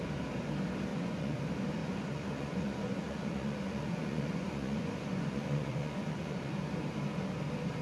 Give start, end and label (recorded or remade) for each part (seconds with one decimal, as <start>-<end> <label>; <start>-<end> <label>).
0.0-0.9 recorded; 0.9-1.4 remade; 1.4-1.8 recorded; 1.8-6.5 remade; 6.5-7.8 recorded